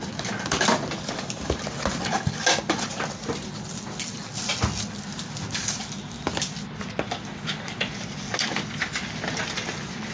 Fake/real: real